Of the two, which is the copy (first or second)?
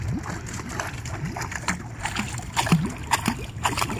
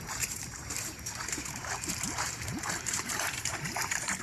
second